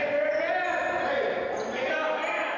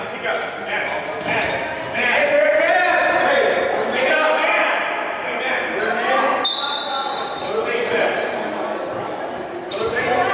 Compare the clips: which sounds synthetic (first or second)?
second